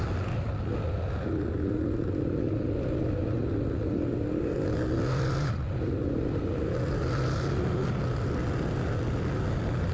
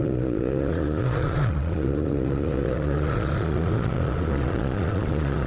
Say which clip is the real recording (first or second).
first